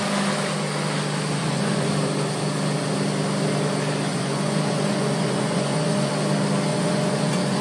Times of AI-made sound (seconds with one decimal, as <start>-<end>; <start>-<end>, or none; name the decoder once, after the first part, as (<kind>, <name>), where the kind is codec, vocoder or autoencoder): 1.4-1.9 (vocoder, Vocos); 4.1-6.1; 6.7-7.6